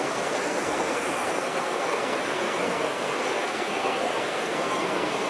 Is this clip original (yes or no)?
no